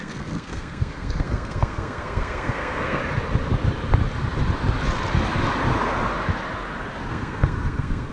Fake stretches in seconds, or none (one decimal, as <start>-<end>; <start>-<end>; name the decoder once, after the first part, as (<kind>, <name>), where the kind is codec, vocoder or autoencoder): 0.0-3.0 (codec, SNAC); 7.1-8.1